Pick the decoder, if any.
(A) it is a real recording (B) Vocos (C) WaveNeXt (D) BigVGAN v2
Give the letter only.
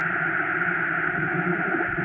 A